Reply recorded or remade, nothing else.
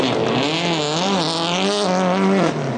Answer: recorded